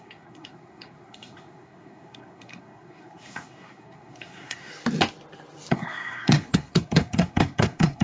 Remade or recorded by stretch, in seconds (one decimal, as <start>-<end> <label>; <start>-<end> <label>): 0.0-4.7 remade; 4.7-5.7 recorded; 5.7-8.0 remade